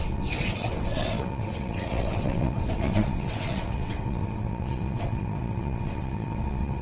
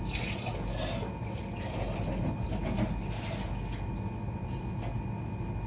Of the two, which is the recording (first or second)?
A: second